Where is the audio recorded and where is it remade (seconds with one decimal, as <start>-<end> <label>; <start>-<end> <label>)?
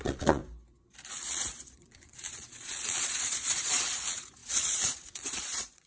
0.0-0.4 remade; 0.4-1.1 recorded; 1.1-5.9 remade